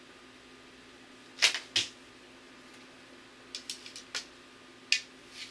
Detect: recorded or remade recorded